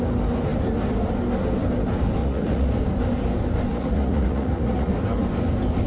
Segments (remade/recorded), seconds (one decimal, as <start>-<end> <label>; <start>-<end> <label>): 0.0-2.2 recorded; 2.2-2.7 remade; 2.7-3.7 recorded; 3.7-4.9 remade; 4.9-5.9 recorded